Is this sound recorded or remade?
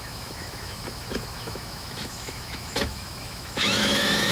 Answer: remade